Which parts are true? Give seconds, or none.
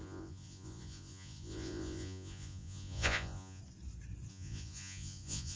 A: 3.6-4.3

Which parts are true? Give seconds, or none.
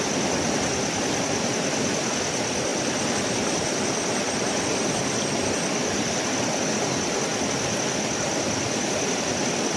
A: 0.0-9.8